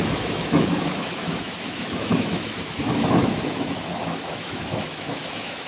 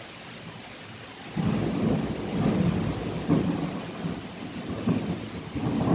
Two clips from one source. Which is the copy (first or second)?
first